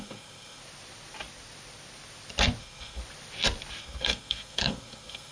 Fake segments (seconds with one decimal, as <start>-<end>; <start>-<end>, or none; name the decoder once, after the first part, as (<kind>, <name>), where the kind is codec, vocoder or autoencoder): 0.0-0.6 (codec, SNAC); 2.6-3.0; 3.8-5.3